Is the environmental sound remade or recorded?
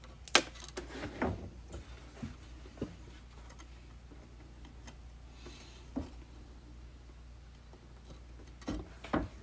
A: recorded